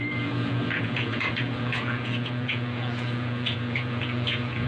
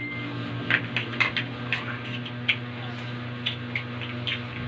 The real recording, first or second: second